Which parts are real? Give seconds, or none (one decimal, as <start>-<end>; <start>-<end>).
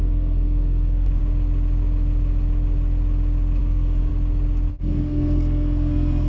1.2-3.6; 4.1-4.7